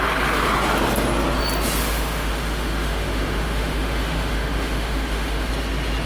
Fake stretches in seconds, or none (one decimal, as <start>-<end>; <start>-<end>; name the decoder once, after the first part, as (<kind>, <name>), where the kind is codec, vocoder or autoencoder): 1.8-5.5 (autoencoder, DAC-VAE)